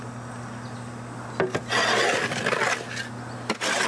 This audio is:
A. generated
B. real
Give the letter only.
B